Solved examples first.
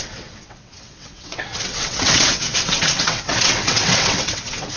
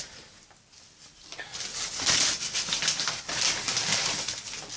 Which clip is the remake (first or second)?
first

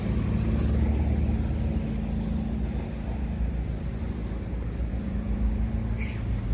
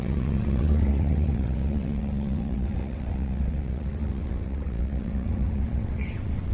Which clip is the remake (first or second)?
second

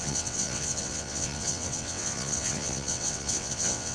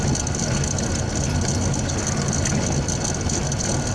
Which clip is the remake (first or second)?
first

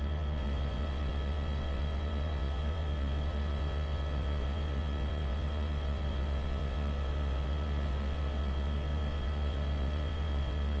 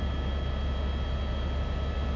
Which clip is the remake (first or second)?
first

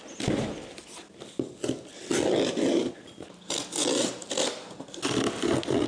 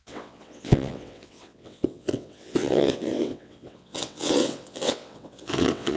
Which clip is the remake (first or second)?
second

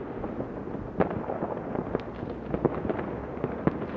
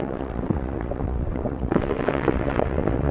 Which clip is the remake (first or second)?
second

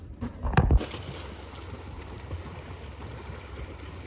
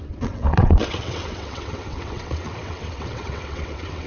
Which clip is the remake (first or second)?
second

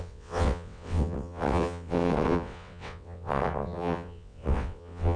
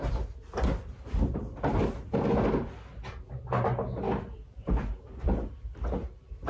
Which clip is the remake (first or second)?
first